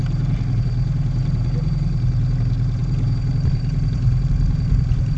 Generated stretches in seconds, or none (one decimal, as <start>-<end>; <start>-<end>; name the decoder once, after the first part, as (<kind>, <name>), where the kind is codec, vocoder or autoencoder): none